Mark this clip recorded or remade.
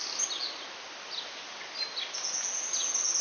recorded